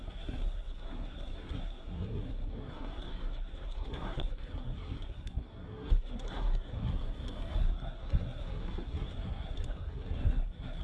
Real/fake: fake